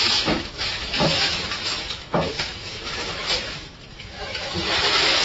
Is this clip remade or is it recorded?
remade